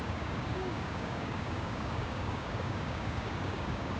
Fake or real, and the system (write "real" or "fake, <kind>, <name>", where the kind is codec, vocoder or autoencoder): fake, codec, DAC